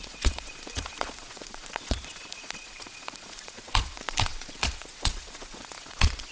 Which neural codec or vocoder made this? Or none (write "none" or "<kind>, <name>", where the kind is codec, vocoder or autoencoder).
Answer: vocoder, Vocos